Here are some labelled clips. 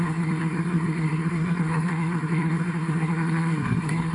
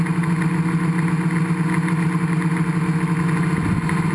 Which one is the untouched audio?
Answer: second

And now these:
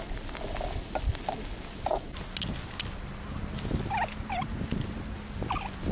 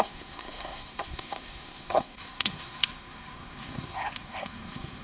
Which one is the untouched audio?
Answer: first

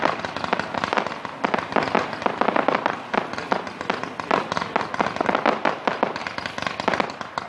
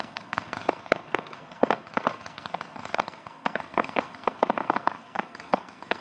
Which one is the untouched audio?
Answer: first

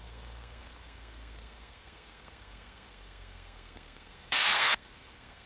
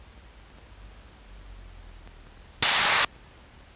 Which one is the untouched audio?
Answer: second